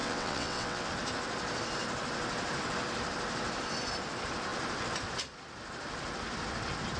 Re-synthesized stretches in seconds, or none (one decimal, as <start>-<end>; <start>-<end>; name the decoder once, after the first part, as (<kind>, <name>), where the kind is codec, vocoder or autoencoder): 0.0-0.9 (vocoder, WaveNeXt)